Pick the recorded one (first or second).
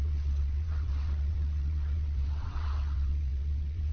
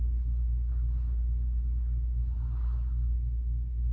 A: second